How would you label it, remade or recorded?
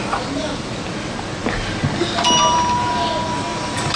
recorded